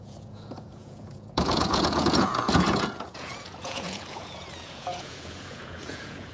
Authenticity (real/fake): fake